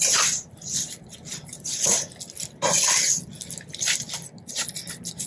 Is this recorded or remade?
recorded